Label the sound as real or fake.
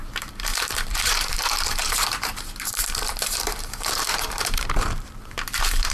fake